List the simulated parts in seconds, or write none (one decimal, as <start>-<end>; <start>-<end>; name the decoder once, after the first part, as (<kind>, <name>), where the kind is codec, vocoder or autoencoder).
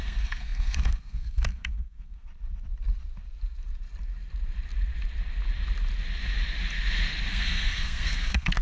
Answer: 0.0-2.3 (codec, SNAC); 7.3-8.6